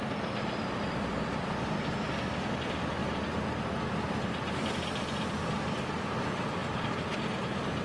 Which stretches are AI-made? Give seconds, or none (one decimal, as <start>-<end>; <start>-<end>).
3.0-3.5